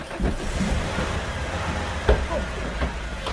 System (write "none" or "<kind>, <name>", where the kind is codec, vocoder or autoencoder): vocoder, BigVGAN v2